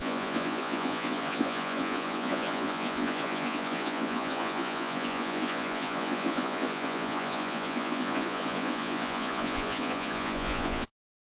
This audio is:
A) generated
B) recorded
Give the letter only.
A